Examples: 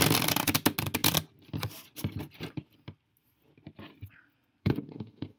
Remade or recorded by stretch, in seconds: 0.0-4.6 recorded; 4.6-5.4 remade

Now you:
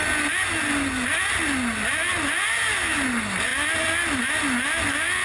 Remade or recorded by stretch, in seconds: 0.0-5.2 recorded

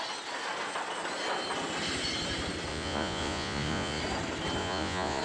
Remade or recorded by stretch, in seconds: 0.0-2.7 recorded; 2.7-4.0 remade; 4.0-4.6 recorded; 4.6-5.2 remade